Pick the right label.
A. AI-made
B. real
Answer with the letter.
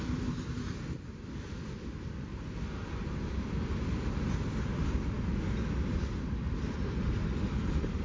B